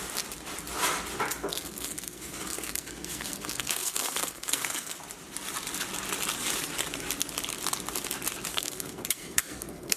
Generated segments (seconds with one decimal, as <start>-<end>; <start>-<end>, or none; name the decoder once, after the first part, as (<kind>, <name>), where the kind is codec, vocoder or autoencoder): 1.5-5.0 (codec, SNAC); 8.5-10.0